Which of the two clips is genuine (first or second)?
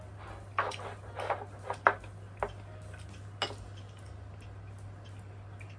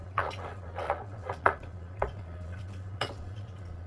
first